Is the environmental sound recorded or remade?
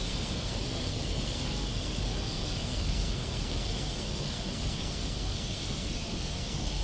remade